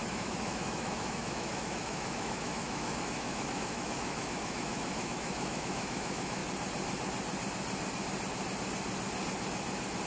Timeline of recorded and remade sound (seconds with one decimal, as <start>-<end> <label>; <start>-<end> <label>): 0.0-6.4 remade; 6.4-10.1 recorded